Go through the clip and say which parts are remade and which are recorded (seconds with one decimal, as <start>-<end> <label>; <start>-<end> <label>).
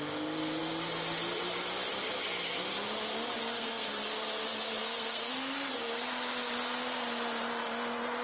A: 0.0-3.4 recorded; 3.4-3.9 remade; 3.9-4.8 recorded; 4.8-5.3 remade; 5.3-8.2 recorded